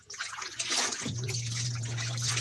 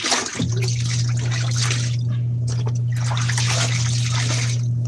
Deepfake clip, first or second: first